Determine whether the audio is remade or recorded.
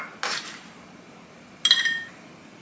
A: recorded